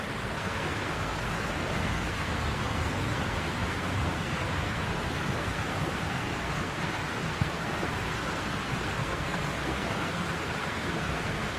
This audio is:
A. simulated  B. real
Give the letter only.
A